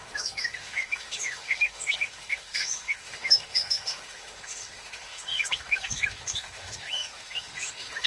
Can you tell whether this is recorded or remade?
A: remade